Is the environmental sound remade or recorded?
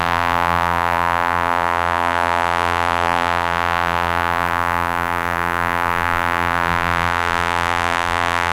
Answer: remade